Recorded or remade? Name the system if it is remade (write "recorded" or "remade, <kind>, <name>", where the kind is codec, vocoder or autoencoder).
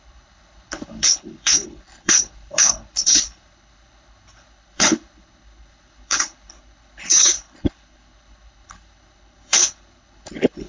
remade, codec, HILCodec